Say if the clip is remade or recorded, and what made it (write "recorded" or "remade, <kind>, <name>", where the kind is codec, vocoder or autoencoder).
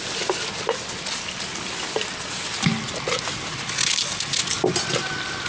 recorded